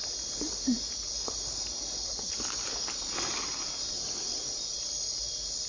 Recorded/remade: recorded